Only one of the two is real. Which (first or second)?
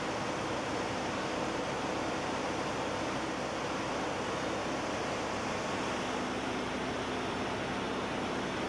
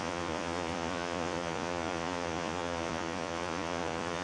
first